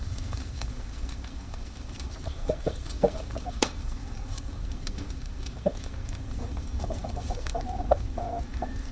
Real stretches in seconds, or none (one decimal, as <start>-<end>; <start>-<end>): none

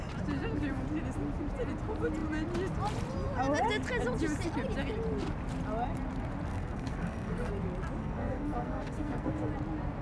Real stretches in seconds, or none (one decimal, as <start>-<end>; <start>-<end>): 0.0-6.5; 7.5-8.0; 9.5-10.0

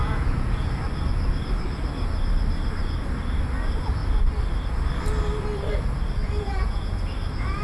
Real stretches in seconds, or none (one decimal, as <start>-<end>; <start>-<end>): 0.7-6.2; 7.0-7.6

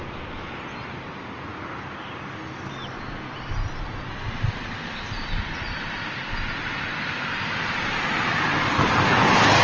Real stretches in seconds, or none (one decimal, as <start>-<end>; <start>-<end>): 0.0-9.6

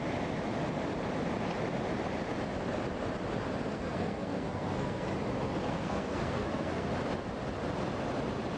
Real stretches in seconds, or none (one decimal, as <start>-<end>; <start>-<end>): 0.0-3.7; 5.1-5.6; 6.9-8.6